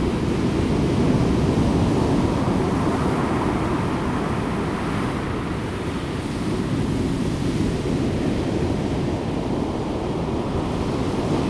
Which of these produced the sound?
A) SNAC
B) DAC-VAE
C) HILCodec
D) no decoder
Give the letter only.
D